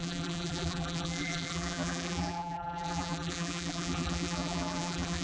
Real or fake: fake